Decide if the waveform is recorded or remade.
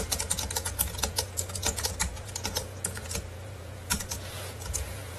remade